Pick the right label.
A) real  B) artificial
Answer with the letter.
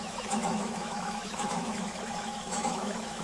B